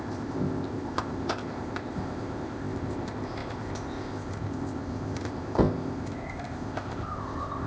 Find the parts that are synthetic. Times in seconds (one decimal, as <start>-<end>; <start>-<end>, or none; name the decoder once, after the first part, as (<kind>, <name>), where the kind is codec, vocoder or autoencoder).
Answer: 0.0-7.7 (codec, ZipCodec)